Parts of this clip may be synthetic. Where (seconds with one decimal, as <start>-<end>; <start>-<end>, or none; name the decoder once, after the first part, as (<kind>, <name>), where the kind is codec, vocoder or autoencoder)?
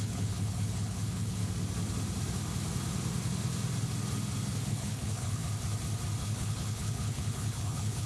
0.0-1.4 (codec, HILCodec); 4.7-5.4; 6.2-8.1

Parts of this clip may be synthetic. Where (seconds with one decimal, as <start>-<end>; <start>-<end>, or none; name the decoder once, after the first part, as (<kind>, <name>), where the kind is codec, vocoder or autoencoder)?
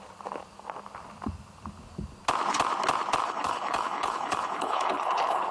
3.2-5.5 (codec, HILCodec)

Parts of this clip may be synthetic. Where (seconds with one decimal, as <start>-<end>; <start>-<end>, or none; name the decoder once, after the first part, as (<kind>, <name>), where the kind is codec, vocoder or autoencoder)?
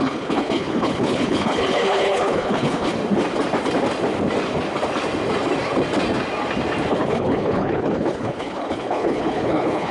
0.0-3.0 (codec, HILCodec); 6.9-9.9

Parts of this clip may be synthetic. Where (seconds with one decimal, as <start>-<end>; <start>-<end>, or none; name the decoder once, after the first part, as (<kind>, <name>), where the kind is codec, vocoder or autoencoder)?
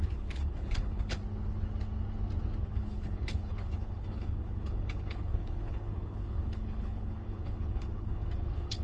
0.0-1.2 (codec, HILCodec); 2.6-8.8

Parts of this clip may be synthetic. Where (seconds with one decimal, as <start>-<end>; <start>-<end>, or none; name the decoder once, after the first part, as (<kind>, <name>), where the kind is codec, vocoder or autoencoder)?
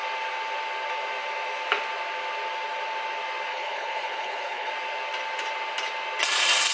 3.5-4.7 (codec, HILCodec)